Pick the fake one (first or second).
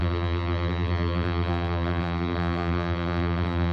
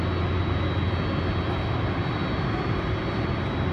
first